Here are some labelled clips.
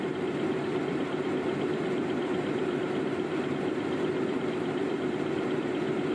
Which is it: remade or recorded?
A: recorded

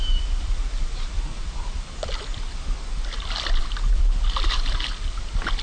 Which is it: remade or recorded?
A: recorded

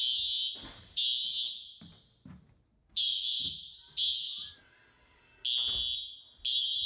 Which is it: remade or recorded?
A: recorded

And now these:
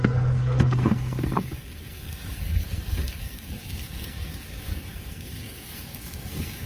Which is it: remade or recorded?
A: remade